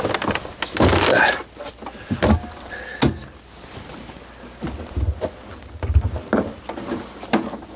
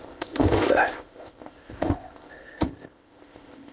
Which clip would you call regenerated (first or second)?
second